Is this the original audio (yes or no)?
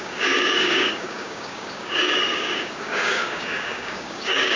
no